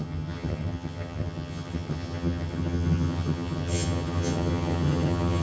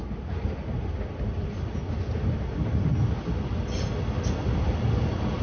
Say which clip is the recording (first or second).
second